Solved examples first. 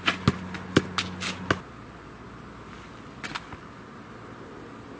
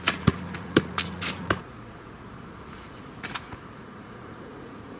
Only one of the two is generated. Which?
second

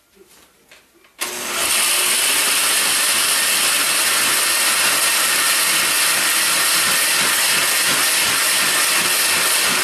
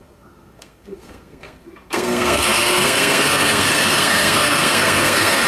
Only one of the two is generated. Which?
second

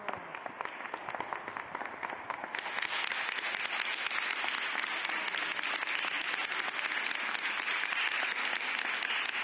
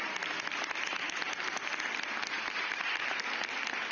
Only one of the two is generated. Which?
second